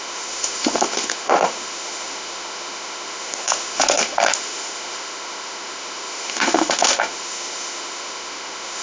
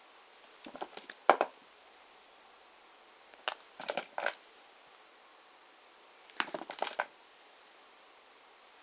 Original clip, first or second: second